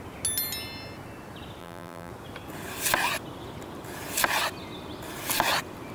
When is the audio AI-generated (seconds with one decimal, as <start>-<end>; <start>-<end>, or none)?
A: 1.6-2.1